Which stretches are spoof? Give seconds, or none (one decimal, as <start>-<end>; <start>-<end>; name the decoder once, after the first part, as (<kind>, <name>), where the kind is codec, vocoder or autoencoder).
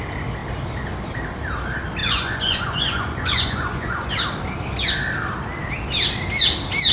2.0-4.1 (vocoder, Vocos)